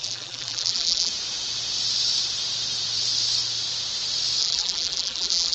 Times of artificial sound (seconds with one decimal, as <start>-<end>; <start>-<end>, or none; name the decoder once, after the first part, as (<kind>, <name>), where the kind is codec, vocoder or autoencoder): 0.0-1.1 (vocoder, BigVGAN v2); 4.4-5.5

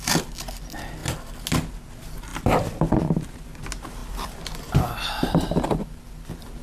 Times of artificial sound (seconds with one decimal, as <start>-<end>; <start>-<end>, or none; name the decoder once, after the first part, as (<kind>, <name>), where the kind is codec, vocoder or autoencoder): 4.0-6.0 (vocoder, BigVGAN v2)

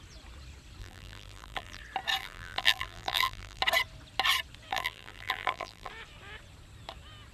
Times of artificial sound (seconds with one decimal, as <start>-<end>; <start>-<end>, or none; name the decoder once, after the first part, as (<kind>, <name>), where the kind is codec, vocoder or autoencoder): 0.8-1.8 (vocoder, BigVGAN v2); 2.2-3.6; 4.7-5.9

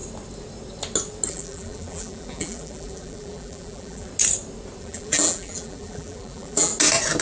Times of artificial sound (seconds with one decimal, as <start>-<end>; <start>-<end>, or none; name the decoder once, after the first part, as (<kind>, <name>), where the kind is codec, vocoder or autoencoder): 1.3-4.1 (vocoder, BigVGAN v2); 4.8-6.7

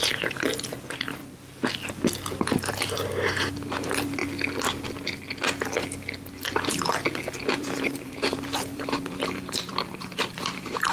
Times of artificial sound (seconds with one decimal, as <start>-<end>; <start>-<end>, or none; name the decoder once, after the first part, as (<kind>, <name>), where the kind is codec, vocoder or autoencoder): 0.0-1.2 (vocoder, BigVGAN v2); 2.3-4.2; 7.5-10.9

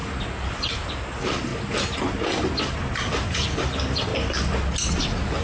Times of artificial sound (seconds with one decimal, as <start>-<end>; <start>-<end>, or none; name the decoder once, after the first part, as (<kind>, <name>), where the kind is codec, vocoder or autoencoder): 0.6-1.5 (vocoder, BigVGAN v2); 2.6-4.1